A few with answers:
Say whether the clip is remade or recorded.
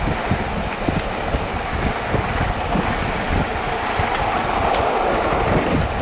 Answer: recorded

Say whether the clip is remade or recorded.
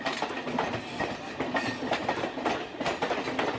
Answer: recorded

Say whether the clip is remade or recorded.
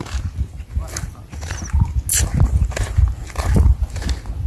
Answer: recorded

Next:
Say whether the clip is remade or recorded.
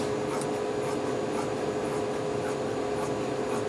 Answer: recorded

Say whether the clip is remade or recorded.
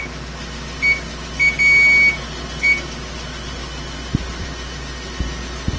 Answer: recorded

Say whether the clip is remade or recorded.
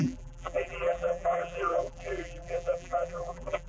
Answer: remade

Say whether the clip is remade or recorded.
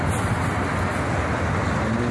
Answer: recorded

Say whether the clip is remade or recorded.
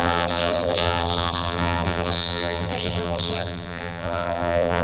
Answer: remade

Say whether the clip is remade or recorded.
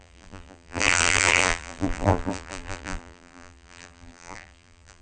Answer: remade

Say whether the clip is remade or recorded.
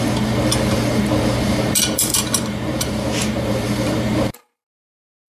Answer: remade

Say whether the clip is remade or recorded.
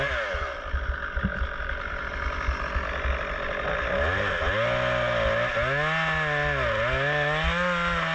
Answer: recorded